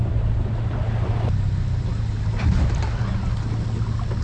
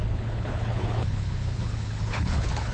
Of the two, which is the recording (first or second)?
first